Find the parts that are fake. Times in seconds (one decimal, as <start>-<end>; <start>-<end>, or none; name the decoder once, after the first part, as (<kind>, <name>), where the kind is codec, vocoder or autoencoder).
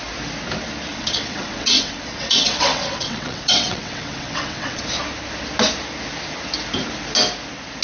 0.9-4.8 (vocoder, WaveNeXt)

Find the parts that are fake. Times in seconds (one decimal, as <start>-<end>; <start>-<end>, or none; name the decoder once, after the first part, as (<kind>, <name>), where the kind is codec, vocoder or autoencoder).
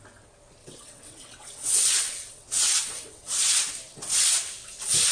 0.6-3.7 (vocoder, WaveNeXt)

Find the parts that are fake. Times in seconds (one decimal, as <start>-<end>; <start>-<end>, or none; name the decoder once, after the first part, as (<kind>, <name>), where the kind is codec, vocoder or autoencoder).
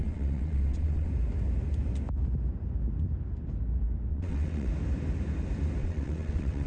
0.0-1.1 (vocoder, WaveNeXt); 4.1-4.7; 5.8-6.7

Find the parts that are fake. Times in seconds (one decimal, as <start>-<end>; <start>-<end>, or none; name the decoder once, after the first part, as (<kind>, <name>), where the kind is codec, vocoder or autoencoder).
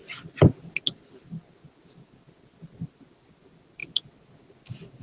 none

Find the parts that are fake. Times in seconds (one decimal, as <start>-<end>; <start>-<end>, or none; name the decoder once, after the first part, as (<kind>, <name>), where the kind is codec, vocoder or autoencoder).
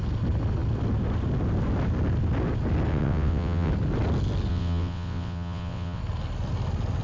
2.9-3.7 (vocoder, WaveNeXt); 4.5-6.0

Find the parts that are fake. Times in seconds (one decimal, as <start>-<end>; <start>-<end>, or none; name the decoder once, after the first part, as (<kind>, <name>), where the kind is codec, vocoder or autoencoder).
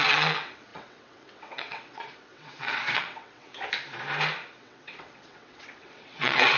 0.0-3.5 (vocoder, WaveNeXt); 4.6-6.6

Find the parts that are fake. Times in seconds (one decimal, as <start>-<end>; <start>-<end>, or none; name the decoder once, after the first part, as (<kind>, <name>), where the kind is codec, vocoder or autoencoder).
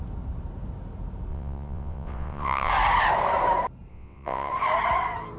1.3-2.7 (vocoder, WaveNeXt); 3.9-4.5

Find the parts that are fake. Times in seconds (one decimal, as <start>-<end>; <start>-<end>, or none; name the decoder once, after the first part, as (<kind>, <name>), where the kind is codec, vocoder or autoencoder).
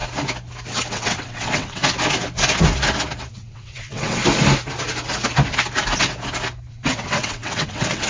0.9-1.8 (vocoder, WaveNeXt); 3.3-4.2; 6.7-8.1